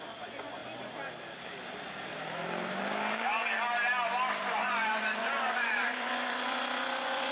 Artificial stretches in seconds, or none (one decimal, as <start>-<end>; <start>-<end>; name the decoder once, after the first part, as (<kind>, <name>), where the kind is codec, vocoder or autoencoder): 0.0-0.6 (vocoder, Vocos); 4.5-7.3